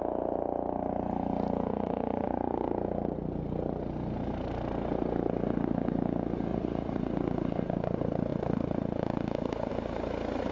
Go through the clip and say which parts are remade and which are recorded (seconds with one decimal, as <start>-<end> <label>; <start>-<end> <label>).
0.0-1.7 recorded; 1.7-2.7 remade; 2.7-6.5 recorded; 6.5-7.0 remade; 7.0-10.5 recorded